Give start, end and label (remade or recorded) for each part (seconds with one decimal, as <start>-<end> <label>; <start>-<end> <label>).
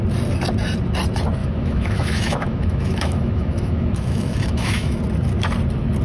0.0-1.4 recorded; 1.4-5.0 remade; 5.0-6.0 recorded